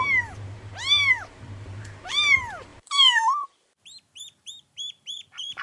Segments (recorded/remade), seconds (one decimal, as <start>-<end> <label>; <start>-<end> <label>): 0.0-5.6 remade